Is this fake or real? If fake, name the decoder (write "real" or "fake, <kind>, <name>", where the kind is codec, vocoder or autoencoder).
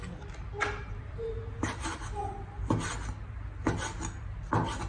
real